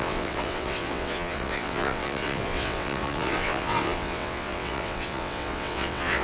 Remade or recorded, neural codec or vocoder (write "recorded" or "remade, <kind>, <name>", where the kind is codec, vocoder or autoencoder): remade, vocoder, WaveNeXt